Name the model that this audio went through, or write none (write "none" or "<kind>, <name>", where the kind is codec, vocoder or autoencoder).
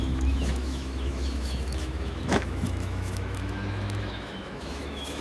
autoencoder, DAC-VAE